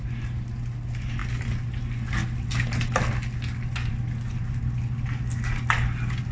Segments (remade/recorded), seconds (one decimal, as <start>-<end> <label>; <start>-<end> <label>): 0.0-6.3 recorded